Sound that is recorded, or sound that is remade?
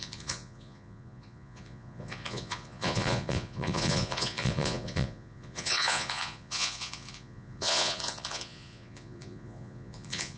remade